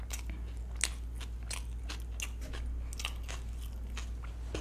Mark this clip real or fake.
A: real